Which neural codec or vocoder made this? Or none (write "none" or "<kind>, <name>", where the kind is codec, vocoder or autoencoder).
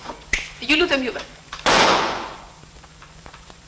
vocoder, Vocos